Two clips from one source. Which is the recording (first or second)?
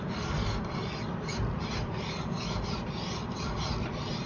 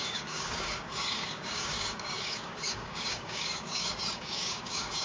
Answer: first